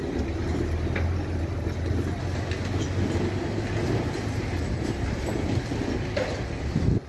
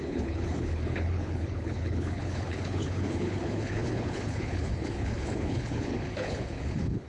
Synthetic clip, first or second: second